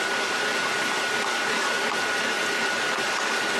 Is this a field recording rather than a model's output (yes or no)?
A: yes